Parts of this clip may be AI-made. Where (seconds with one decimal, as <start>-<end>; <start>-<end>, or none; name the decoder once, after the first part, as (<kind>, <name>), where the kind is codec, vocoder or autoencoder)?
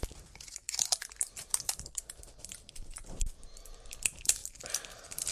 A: none